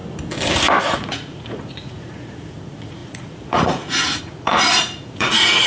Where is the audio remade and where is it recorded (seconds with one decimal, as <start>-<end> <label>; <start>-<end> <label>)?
0.0-0.8 recorded; 0.8-5.7 remade